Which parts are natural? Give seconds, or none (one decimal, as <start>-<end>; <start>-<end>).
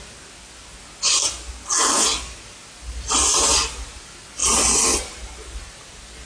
0.0-6.3